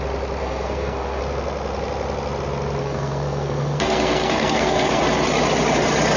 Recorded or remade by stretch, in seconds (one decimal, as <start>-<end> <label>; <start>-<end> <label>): 0.0-0.4 recorded; 0.4-1.2 remade; 1.2-2.8 recorded; 2.8-5.0 remade; 5.0-6.2 recorded